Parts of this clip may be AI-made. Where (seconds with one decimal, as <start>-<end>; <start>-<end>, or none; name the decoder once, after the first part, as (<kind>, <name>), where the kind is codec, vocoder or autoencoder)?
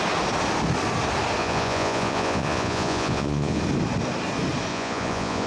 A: 1.4-3.6 (vocoder, Vocos); 4.7-5.5